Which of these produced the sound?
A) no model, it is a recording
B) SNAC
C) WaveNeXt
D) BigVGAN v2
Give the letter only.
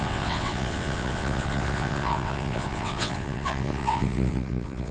C